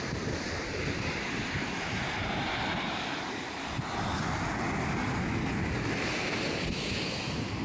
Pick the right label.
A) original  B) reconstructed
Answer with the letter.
A